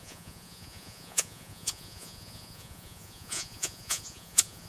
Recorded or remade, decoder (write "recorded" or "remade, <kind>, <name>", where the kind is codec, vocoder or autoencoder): remade, vocoder, Vocos